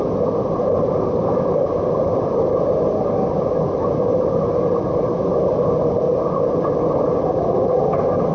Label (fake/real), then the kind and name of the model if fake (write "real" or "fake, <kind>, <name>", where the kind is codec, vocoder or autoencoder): real